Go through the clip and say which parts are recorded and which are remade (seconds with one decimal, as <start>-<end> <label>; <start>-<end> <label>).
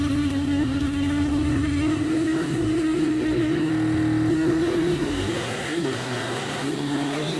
0.0-3.7 remade; 3.7-4.3 recorded; 4.3-7.4 remade